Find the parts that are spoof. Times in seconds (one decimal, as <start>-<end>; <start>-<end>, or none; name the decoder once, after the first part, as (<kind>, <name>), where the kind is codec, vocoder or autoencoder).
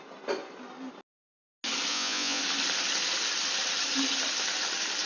1.9-2.4 (vocoder, Vocos)